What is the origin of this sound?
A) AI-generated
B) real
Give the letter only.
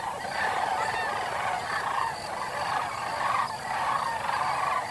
B